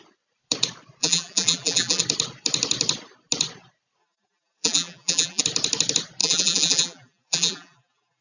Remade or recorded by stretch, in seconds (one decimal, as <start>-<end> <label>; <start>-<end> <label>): 0.0-1.0 recorded; 1.0-2.0 remade; 2.0-4.0 recorded; 4.0-5.4 remade; 5.4-6.2 recorded; 6.2-8.2 remade